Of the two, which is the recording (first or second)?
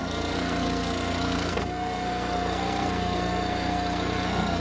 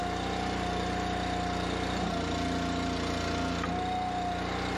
second